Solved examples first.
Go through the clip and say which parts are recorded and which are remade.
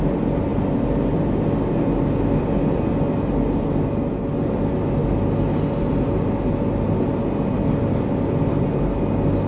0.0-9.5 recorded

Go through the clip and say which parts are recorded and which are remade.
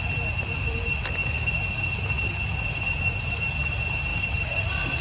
0.0-1.2 recorded; 1.2-3.2 remade; 3.2-4.1 recorded; 4.1-5.0 remade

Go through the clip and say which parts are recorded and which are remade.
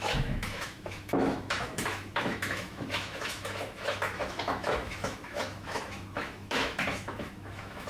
0.0-7.9 remade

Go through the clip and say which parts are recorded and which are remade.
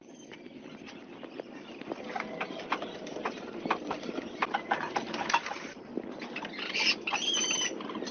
0.0-8.1 recorded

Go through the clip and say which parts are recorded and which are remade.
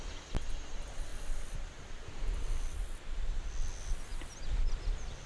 0.0-5.3 recorded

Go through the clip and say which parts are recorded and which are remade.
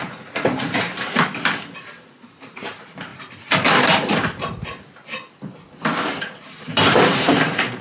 0.0-3.1 remade; 3.1-6.6 recorded; 6.6-7.8 remade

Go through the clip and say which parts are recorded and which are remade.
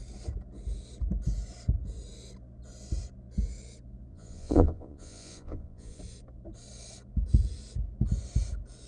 0.0-4.1 recorded; 4.1-6.0 remade; 6.0-8.9 recorded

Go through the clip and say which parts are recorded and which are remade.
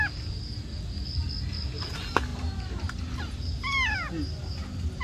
0.0-2.3 recorded; 2.3-3.1 remade; 3.1-5.0 recorded